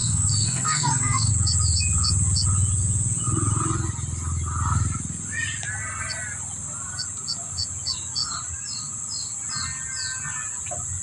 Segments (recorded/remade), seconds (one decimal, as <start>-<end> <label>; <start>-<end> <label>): 0.0-1.3 remade; 1.3-11.0 recorded